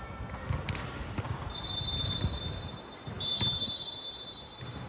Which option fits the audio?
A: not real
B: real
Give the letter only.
B